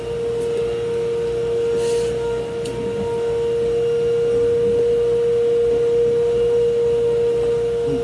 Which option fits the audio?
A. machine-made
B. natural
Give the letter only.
B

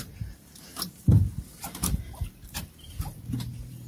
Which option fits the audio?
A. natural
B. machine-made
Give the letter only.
B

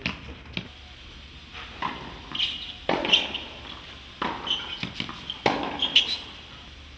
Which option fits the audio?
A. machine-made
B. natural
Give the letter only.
B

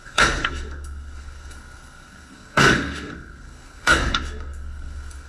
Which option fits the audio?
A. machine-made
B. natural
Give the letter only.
A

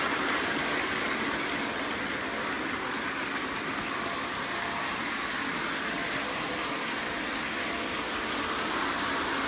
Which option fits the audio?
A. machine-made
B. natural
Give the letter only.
B